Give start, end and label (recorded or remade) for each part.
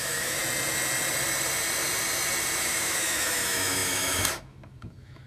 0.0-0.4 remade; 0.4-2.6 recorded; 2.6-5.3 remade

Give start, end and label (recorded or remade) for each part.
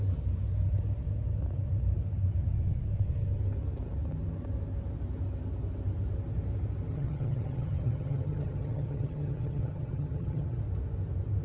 0.0-6.9 recorded; 6.9-10.6 remade; 10.6-11.4 recorded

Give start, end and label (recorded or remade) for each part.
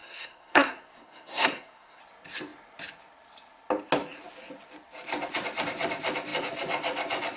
0.0-2.0 remade; 2.0-7.4 recorded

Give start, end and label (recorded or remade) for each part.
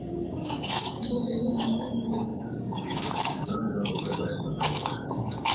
0.0-5.5 remade